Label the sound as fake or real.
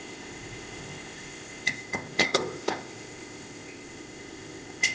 fake